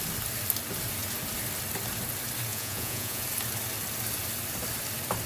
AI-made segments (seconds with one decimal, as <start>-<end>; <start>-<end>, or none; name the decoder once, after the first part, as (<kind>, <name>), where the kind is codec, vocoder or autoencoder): 2.5-3.2 (vocoder, Vocos)